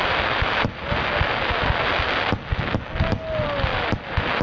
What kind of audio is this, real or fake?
real